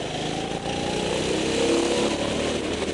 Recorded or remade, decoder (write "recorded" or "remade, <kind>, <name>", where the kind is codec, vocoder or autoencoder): recorded